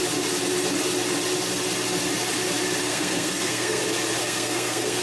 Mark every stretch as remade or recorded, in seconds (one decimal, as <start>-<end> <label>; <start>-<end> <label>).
0.0-2.8 recorded; 2.8-3.8 remade; 3.8-4.2 recorded; 4.2-5.0 remade